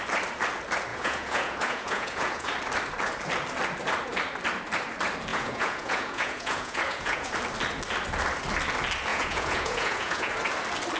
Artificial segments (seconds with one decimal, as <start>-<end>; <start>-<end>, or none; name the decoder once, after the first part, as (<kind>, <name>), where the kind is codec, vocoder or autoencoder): 0.9-2.5 (vocoder, Vocos); 5.3-7.3; 9.1-10.3